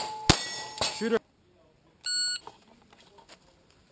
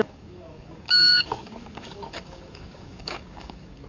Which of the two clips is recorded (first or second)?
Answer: first